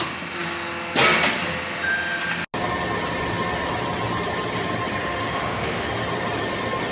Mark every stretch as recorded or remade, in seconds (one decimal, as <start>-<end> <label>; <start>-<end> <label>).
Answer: 0.0-5.0 recorded; 5.0-5.9 remade; 5.9-6.9 recorded